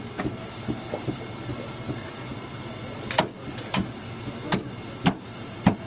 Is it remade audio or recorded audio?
recorded